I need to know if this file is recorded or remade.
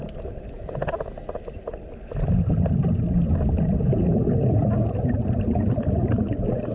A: recorded